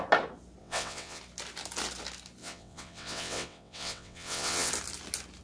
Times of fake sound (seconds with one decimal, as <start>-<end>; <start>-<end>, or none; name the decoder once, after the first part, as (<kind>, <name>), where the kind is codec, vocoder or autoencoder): 0.6-1.2 (vocoder, WaveNeXt); 2.4-4.7